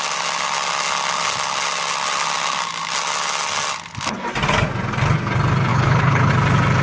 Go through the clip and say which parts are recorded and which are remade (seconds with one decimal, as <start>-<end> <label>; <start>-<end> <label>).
0.0-5.7 recorded; 5.7-6.3 remade; 6.3-6.8 recorded